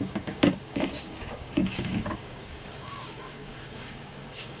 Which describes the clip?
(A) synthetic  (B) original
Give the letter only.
A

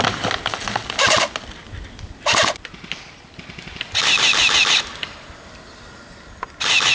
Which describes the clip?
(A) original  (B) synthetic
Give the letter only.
A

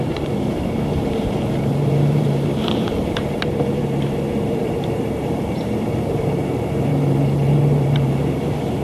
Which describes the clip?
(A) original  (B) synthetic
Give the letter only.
B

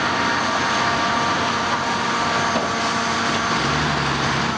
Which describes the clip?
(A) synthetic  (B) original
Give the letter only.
B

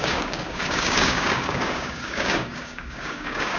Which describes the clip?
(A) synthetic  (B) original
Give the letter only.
A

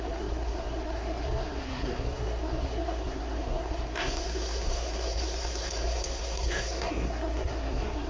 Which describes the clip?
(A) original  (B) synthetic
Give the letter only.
B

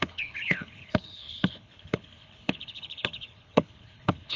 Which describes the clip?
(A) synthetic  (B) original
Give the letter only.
A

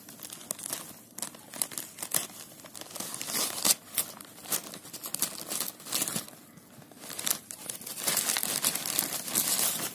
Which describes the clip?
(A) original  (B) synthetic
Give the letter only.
A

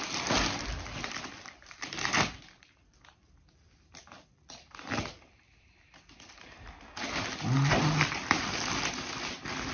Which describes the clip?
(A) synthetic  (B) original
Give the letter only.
A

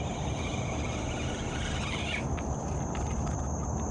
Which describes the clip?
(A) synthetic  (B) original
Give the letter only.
B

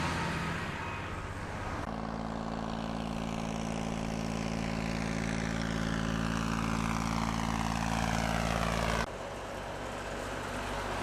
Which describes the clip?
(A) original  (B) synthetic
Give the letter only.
A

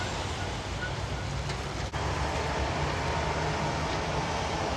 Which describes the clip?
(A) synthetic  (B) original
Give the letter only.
B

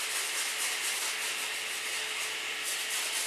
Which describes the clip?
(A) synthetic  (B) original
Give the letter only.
B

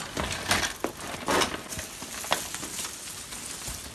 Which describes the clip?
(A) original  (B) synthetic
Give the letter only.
A